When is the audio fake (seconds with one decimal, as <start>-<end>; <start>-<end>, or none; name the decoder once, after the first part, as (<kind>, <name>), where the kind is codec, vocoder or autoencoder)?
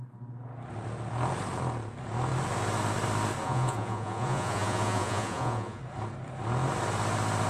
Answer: 3.4-5.8 (vocoder, Vocos)